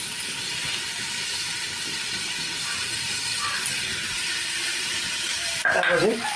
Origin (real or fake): fake